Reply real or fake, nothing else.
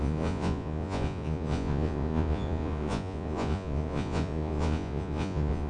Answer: fake